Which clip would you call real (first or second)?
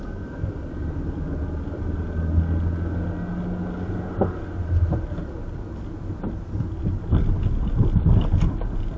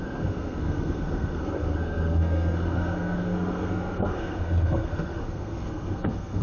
first